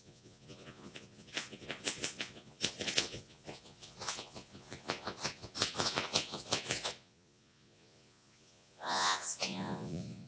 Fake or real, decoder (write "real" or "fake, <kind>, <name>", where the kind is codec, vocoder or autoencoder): fake, vocoder, Vocos